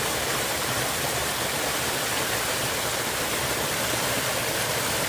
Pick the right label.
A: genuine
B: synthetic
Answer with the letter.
B